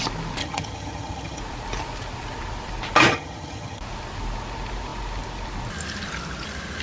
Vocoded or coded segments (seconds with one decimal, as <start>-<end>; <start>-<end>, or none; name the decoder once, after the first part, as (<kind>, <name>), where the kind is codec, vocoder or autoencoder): 0.4-1.4 (vocoder, HiFi-GAN); 3.1-3.8